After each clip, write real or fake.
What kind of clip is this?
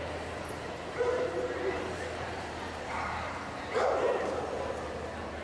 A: fake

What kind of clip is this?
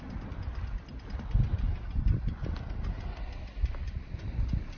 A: real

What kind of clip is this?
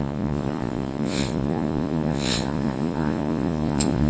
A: fake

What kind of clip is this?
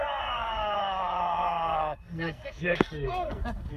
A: fake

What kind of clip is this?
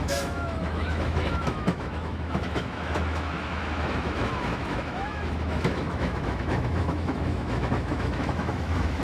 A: fake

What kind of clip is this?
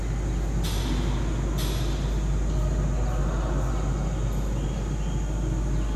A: real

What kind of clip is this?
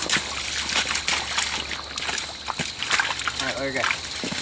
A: real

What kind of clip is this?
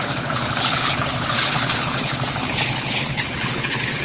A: fake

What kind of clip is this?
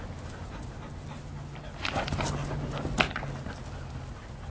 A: real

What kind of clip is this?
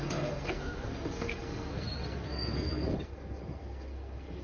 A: fake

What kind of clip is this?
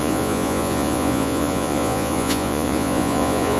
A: fake